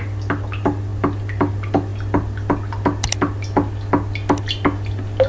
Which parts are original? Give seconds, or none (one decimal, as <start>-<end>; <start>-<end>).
0.0-5.3